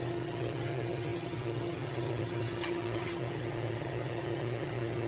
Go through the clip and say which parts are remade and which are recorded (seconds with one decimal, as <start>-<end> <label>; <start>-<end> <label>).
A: 0.0-5.1 remade

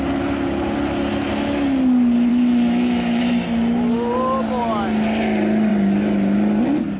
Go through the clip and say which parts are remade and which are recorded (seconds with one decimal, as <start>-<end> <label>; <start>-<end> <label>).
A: 0.0-2.3 recorded; 2.3-3.2 remade; 3.2-7.0 recorded

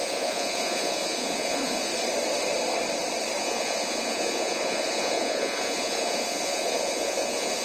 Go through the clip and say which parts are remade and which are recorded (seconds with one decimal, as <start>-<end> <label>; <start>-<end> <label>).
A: 0.0-1.9 remade; 1.9-3.4 recorded; 3.4-7.6 remade